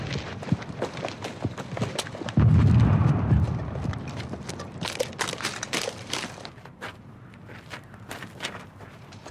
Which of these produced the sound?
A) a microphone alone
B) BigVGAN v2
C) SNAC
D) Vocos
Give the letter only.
B